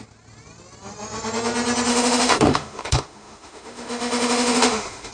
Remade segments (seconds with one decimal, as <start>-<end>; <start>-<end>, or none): 1.9-5.1